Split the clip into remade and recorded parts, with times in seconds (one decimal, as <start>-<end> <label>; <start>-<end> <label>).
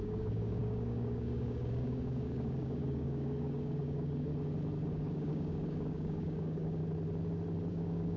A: 0.0-4.3 remade; 4.3-4.9 recorded; 4.9-6.8 remade; 6.8-7.7 recorded; 7.7-8.2 remade